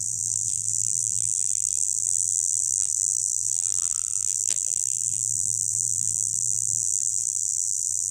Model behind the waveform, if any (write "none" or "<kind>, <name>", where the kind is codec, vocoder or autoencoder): vocoder, BigVGAN v2